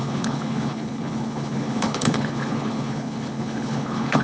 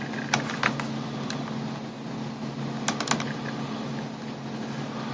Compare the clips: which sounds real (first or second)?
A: second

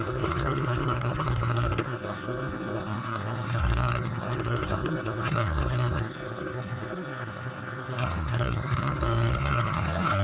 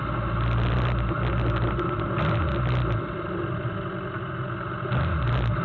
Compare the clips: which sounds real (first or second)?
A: second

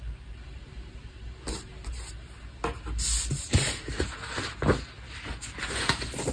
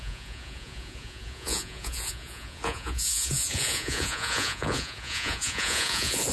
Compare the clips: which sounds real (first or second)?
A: first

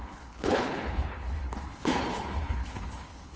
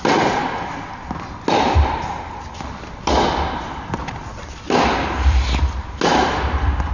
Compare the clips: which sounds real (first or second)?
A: second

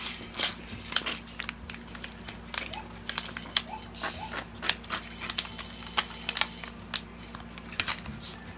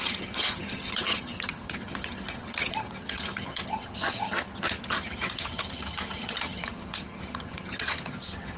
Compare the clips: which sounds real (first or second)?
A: first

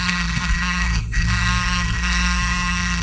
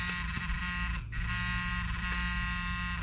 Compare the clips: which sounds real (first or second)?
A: second